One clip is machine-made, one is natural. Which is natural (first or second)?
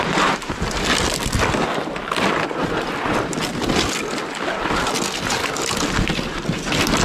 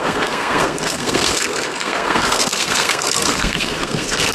first